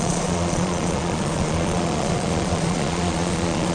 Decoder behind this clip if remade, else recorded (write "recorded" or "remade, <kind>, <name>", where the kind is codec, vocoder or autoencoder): remade, vocoder, Vocos